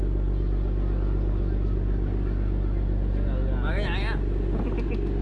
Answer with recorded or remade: recorded